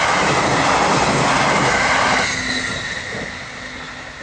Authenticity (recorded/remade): recorded